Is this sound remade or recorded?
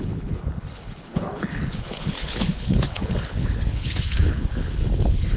remade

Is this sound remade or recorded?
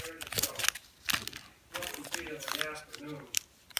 recorded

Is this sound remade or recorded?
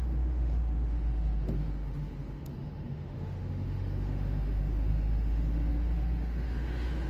remade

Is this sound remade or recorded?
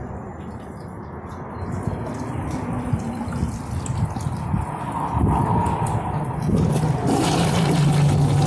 recorded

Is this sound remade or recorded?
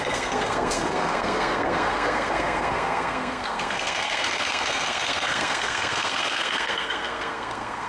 remade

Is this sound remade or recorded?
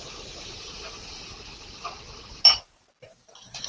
recorded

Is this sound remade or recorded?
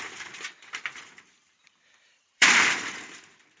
remade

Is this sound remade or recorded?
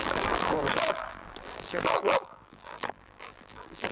remade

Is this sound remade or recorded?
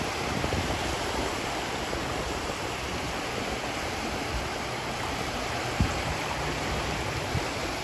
recorded